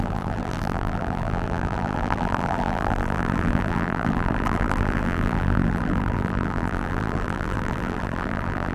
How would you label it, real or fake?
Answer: fake